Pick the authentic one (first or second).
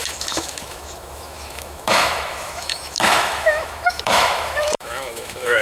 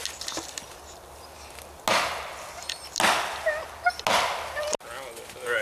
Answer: second